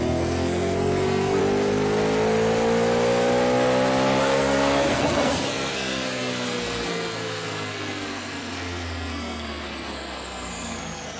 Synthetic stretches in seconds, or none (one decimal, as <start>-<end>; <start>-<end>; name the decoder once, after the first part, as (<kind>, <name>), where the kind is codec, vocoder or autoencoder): 0.0-1.4 (codec, SNAC); 4.2-11.2